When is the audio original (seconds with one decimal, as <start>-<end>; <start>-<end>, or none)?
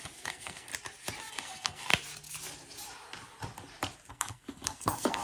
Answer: 0.7-1.3; 1.9-4.1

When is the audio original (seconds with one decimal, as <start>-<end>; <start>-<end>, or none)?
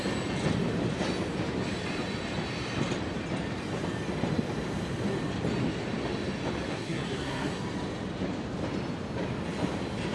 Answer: 0.0-6.7; 7.6-10.1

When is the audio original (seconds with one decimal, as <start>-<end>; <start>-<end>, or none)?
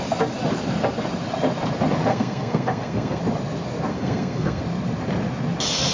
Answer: 0.0-2.1; 3.2-3.9; 4.6-5.9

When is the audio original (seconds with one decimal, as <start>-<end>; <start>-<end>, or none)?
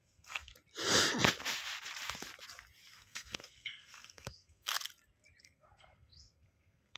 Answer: 0.5-2.9; 4.7-5.4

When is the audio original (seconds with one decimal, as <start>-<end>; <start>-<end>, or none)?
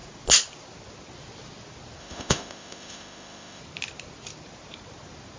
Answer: 0.0-2.0; 3.6-5.4